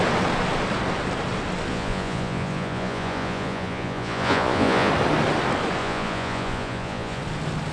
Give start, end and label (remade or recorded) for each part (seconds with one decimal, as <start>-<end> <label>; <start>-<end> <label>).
0.0-1.7 recorded; 1.7-4.9 remade; 4.9-5.8 recorded; 5.8-7.2 remade; 7.2-7.7 recorded